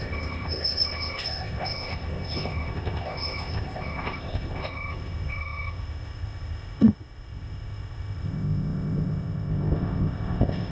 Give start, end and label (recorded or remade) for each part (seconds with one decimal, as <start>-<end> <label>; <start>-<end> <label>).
0.0-10.7 remade

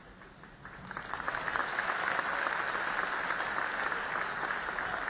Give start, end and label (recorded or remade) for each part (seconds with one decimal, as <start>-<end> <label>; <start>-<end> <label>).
0.0-1.6 recorded; 1.6-2.3 remade; 2.3-5.1 recorded

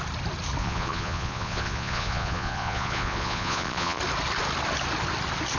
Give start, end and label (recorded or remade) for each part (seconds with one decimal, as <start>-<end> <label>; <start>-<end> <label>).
0.0-0.6 recorded; 0.6-4.0 remade; 4.0-5.6 recorded

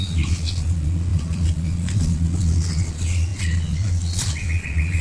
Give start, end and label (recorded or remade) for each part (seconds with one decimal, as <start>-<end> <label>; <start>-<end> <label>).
0.0-5.0 remade

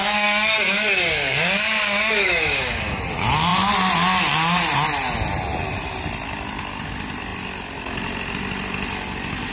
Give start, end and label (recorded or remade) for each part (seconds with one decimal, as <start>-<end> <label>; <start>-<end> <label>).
0.0-3.0 remade; 3.0-9.5 recorded